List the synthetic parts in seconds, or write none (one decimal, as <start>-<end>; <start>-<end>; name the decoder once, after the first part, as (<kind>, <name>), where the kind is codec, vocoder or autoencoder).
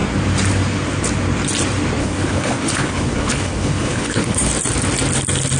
2.0-4.5 (codec, HILCodec)